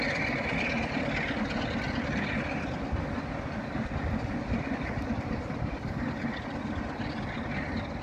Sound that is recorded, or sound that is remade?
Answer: recorded